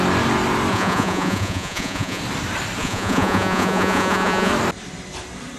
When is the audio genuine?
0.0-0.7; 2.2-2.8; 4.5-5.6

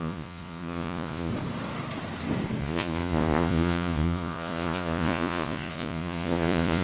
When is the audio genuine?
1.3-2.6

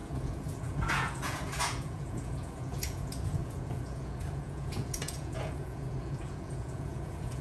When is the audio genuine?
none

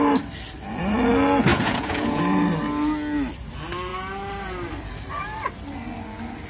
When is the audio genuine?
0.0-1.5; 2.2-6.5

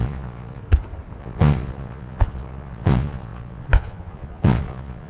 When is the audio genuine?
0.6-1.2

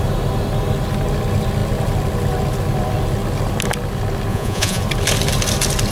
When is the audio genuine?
0.0-4.3; 4.8-5.9

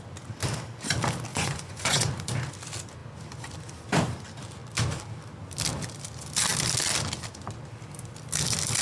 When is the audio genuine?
0.0-1.3; 2.1-8.8

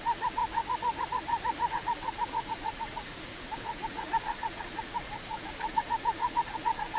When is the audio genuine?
0.4-1.7